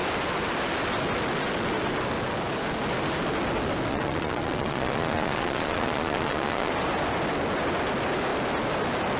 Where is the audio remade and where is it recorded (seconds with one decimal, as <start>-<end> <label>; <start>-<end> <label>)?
0.0-3.9 recorded; 3.9-6.7 remade; 6.7-9.2 recorded